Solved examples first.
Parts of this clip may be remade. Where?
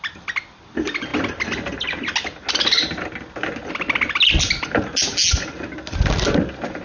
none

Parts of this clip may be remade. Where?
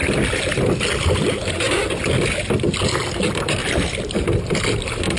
none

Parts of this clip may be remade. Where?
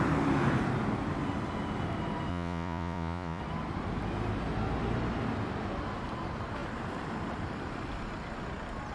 2.3-3.4 (vocoder, Vocos)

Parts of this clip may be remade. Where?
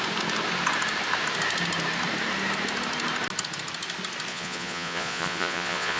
4.3-6.0 (vocoder, Vocos)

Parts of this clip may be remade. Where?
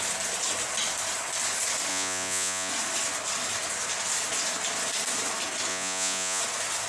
1.9-2.7 (vocoder, Vocos); 5.7-6.4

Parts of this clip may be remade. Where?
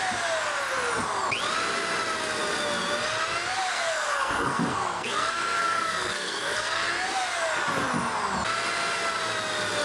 3.7-6.9 (codec, SNAC)